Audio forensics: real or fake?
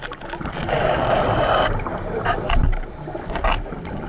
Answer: real